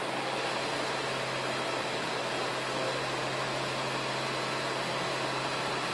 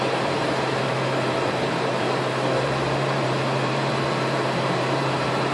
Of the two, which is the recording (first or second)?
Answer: first